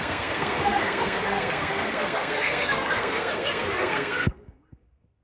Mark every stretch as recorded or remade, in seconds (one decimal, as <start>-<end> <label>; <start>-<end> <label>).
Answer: 0.0-5.2 remade